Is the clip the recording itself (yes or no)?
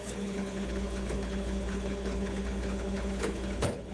no